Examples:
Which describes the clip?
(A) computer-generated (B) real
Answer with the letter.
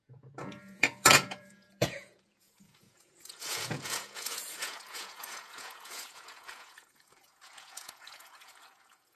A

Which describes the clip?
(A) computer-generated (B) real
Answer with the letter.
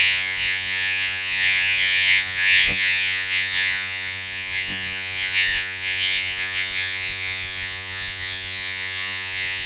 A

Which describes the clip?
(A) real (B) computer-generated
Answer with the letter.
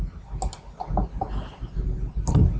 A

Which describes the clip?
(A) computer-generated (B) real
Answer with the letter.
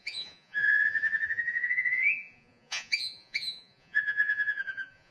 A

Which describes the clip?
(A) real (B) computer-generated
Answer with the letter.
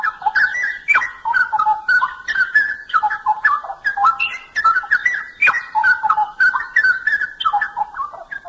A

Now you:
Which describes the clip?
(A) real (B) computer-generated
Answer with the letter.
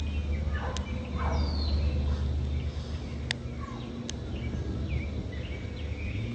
A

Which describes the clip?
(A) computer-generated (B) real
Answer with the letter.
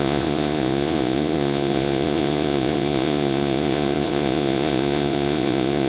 A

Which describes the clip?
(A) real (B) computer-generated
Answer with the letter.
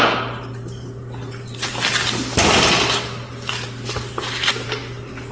A